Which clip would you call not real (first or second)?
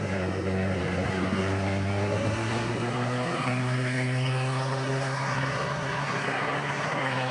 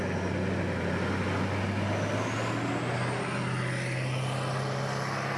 first